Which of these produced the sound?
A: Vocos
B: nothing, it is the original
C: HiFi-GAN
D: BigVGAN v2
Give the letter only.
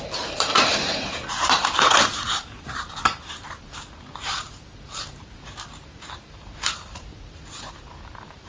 D